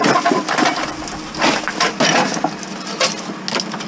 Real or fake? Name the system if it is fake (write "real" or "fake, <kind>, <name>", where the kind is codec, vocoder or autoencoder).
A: real